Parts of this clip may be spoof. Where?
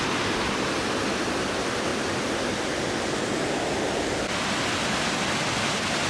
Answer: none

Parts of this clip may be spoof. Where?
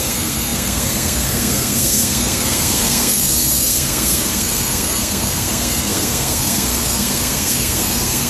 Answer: 0.0-8.3 (codec, SNAC)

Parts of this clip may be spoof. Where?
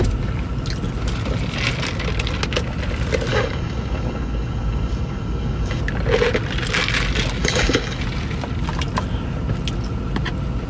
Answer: 3.3-5.8 (codec, DAC); 7.4-8.0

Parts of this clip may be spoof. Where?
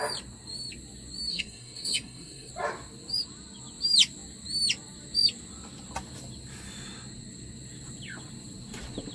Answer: 1.3-2.5 (codec, SNAC)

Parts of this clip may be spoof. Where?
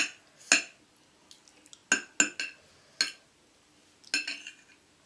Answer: none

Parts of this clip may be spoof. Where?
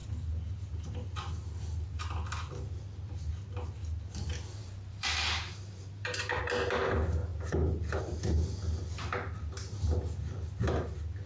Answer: 4.6-6.4 (vocoder, BigVGAN v2)